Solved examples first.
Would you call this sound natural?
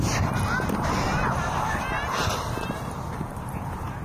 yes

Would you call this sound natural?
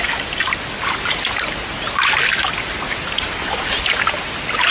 yes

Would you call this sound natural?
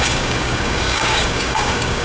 no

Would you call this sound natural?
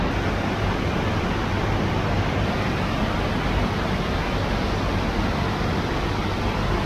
yes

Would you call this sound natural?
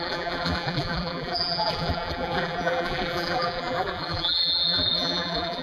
no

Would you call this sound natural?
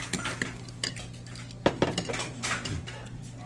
yes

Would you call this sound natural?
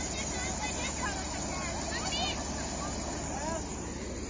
yes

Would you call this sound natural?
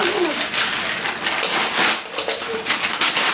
yes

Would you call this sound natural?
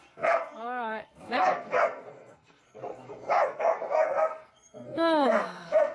no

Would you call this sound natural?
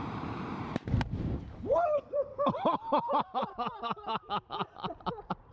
no